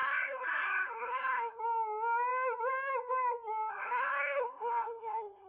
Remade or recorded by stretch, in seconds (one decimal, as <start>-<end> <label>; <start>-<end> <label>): 0.0-1.6 remade; 1.6-3.7 recorded; 3.7-5.5 remade